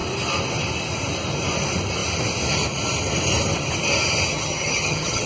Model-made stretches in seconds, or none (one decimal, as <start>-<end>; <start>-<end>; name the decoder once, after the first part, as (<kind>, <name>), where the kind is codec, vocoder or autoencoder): 4.3-5.3 (vocoder, HiFi-GAN)